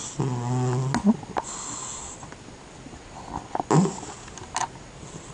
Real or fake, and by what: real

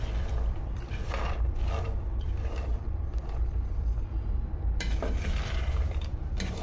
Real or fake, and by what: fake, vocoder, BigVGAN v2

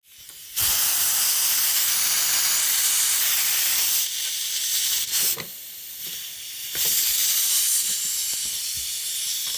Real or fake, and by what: real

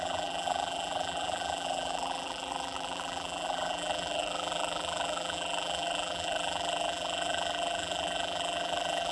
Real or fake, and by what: fake, vocoder, BigVGAN v2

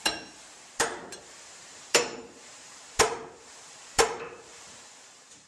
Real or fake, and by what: fake, vocoder, BigVGAN v2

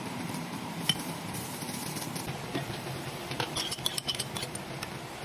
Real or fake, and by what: fake, vocoder, BigVGAN v2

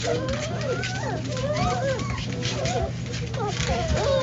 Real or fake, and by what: real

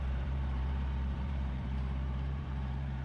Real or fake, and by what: fake, vocoder, BigVGAN v2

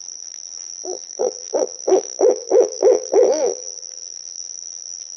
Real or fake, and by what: fake, vocoder, BigVGAN v2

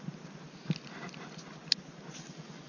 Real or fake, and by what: real